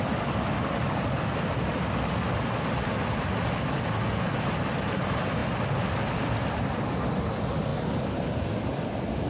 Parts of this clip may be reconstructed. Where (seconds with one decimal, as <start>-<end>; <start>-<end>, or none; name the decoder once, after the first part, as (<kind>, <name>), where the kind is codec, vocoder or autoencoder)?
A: none